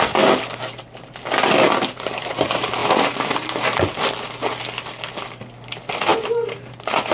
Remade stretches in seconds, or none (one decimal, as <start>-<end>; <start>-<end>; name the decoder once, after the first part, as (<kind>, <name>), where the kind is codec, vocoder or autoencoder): 2.8-3.8 (vocoder, BigVGAN v2); 6.1-7.1